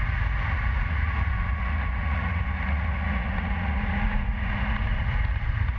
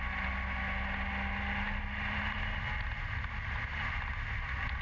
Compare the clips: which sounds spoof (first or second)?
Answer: first